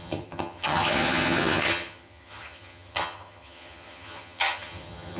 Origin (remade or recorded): remade